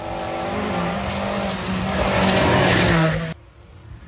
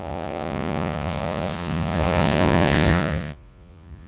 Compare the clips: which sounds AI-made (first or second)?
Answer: second